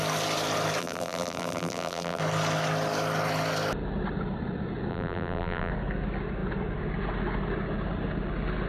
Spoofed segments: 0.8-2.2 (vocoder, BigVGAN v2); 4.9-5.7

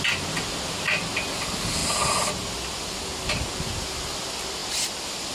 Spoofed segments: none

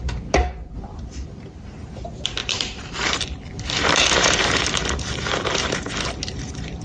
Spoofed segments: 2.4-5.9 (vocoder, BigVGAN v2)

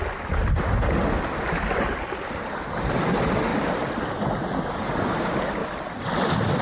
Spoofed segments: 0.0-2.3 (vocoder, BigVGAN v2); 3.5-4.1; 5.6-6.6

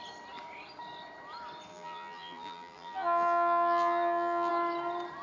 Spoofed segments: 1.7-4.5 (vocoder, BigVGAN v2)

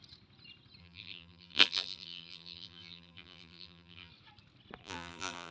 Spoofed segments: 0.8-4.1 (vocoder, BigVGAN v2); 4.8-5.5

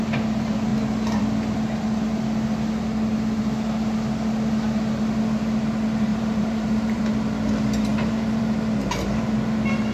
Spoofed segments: 6.1-7.0 (vocoder, BigVGAN v2)